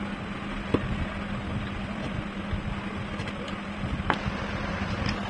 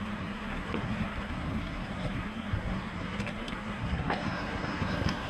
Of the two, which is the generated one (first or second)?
second